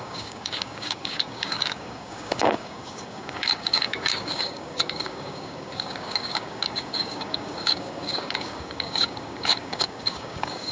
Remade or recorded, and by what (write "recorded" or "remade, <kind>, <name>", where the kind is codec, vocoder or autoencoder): remade, codec, DAC